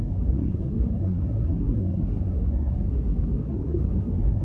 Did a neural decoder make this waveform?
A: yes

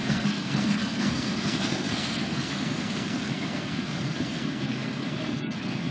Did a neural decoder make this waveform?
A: yes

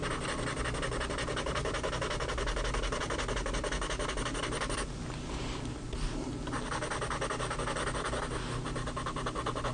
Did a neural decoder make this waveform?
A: no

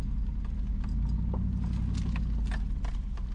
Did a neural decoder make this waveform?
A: no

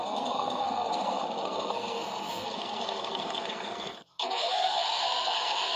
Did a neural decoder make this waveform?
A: yes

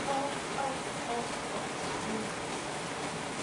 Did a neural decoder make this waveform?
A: no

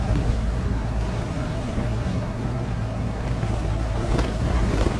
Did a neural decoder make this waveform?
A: yes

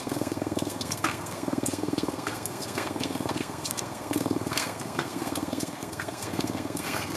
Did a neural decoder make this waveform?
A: yes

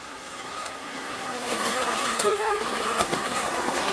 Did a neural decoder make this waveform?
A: yes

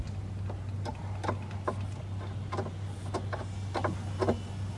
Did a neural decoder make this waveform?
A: no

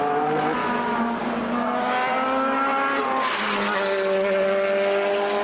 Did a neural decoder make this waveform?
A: no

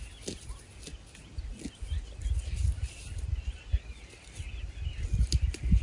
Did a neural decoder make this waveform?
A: no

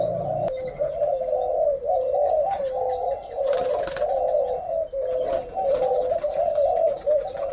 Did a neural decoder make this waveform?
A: no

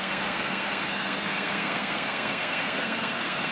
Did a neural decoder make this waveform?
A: yes